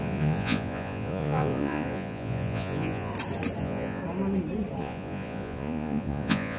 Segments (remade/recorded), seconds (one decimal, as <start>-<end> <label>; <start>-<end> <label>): 0.0-3.1 remade; 3.1-3.6 recorded; 3.6-4.0 remade; 4.0-4.8 recorded; 4.8-6.6 remade